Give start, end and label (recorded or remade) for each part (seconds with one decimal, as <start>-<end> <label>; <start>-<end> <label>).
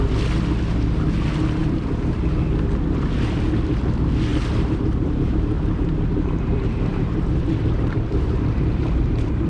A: 0.0-4.3 recorded; 4.3-9.5 remade